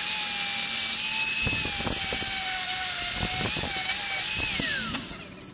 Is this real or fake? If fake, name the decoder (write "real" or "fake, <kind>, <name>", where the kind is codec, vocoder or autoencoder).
real